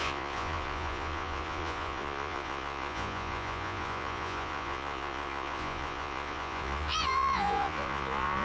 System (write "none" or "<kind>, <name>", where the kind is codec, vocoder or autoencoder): vocoder, Vocos